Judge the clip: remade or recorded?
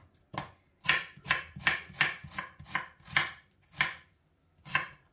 recorded